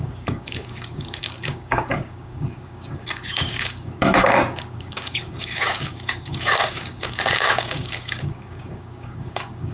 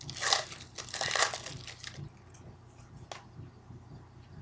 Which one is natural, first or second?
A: second